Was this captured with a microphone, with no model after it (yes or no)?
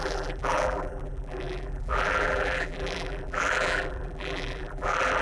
no